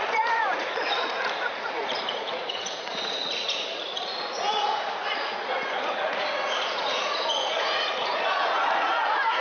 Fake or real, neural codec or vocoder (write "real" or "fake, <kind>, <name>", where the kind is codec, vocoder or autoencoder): fake, vocoder, Vocos